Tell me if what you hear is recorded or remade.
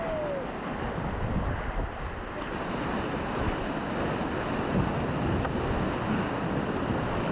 recorded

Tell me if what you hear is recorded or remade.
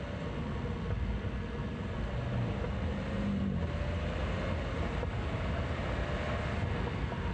recorded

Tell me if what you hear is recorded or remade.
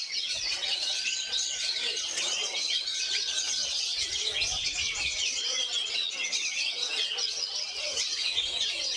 remade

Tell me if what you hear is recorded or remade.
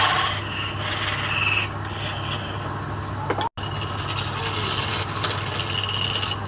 recorded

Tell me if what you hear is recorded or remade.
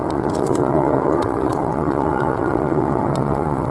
remade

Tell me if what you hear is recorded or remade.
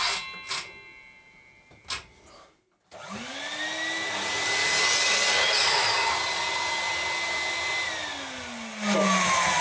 recorded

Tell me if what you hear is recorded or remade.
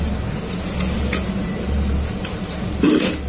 recorded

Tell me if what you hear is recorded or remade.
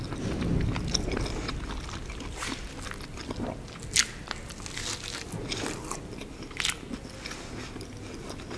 recorded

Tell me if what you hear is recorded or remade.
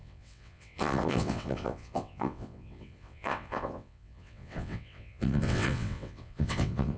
remade